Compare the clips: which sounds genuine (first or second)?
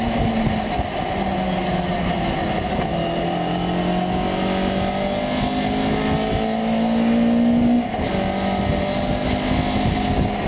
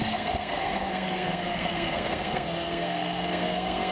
first